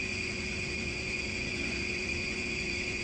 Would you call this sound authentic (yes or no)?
no